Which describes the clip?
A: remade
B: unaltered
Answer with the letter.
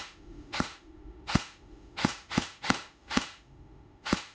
A